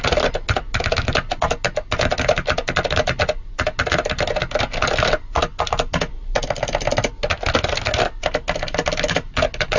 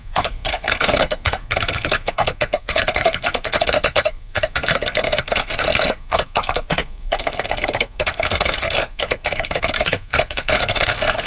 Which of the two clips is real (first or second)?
first